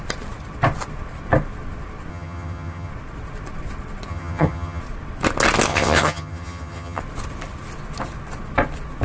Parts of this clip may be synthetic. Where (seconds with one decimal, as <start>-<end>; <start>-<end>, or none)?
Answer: 2.1-2.9; 4.1-4.8; 5.7-7.0